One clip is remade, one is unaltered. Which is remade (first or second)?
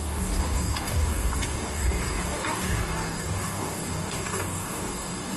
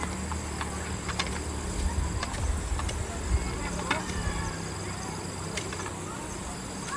first